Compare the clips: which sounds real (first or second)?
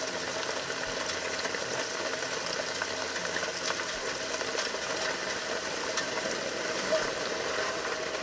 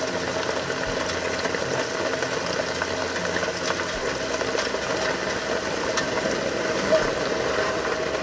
second